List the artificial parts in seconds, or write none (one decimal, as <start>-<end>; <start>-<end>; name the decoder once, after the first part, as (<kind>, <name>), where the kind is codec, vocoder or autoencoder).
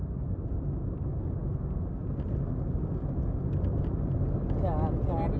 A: none